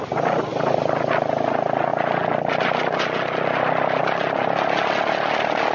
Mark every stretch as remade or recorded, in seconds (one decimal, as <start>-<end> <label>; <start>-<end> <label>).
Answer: 0.0-5.7 recorded